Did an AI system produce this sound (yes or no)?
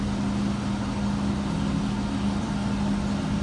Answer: no